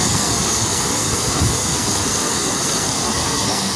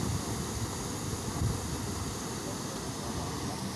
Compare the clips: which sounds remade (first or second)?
first